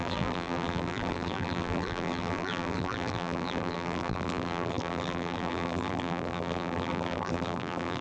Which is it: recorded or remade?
remade